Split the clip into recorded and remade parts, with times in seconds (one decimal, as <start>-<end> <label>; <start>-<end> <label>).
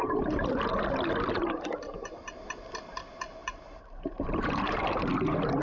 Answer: 0.0-1.4 recorded; 1.4-2.7 remade; 2.7-3.4 recorded; 3.4-4.8 remade; 4.8-5.6 recorded